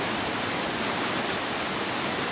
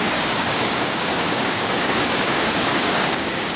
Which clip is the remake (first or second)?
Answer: second